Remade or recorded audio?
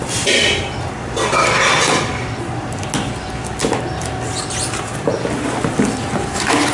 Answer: recorded